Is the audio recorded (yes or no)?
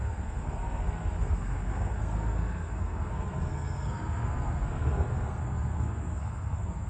no